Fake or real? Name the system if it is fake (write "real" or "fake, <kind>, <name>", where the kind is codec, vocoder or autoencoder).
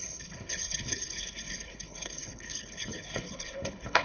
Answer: fake, codec, HILCodec